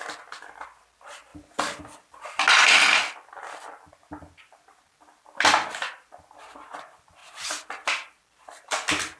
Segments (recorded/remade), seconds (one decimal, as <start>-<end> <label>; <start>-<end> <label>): 0.0-9.2 recorded